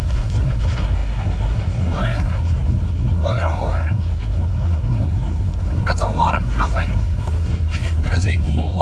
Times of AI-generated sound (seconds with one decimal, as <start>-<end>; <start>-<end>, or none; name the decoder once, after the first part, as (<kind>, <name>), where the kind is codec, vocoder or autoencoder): 0.0-8.8 (codec, SNAC)